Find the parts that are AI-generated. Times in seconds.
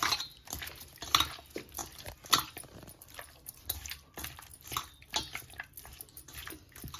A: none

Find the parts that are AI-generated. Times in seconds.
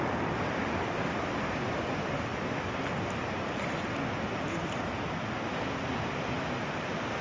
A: none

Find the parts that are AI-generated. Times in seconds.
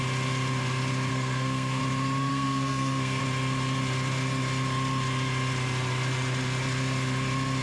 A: 1.1-1.8 (codec, SNAC); 2.3-3.2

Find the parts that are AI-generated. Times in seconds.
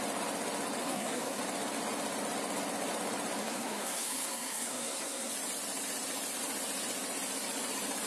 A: 0.8-1.4 (codec, SNAC); 3.4-5.3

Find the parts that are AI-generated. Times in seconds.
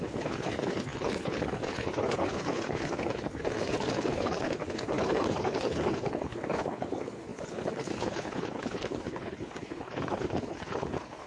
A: 0.0-11.3 (codec, HILCodec)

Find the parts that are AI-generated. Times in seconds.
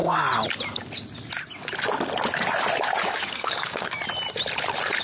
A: 3.0-4.0 (codec, DAC)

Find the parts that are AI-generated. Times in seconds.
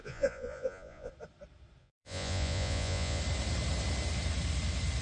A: 0.0-1.1 (vocoder, Vocos); 1.8-3.2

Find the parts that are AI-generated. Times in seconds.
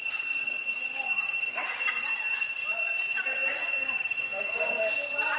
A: 0.9-1.8 (codec, DAC); 3.6-4.8